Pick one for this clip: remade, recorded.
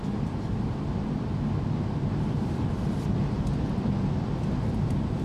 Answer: recorded